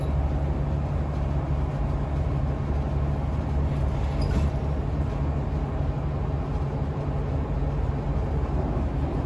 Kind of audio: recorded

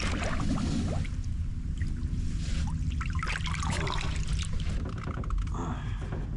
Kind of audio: recorded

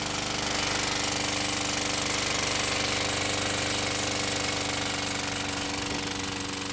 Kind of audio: recorded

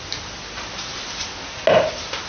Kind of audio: recorded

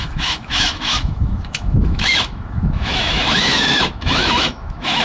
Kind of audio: remade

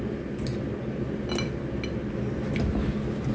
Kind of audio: recorded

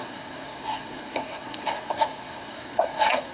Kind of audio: remade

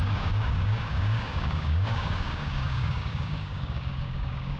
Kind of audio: remade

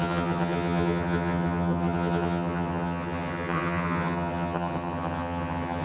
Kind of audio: remade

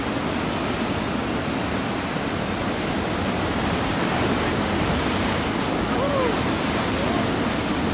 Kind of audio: recorded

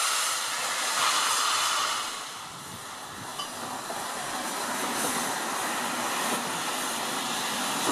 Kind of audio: recorded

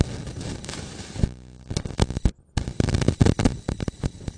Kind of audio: recorded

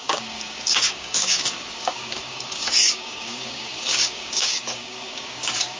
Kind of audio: remade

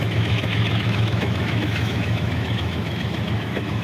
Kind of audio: remade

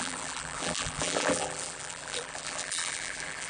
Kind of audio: remade